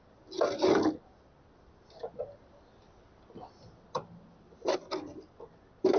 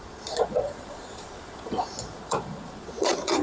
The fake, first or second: second